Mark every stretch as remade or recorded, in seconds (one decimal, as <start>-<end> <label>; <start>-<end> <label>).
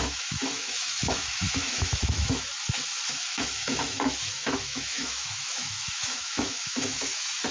0.0-2.5 remade; 2.5-3.1 recorded; 3.1-7.5 remade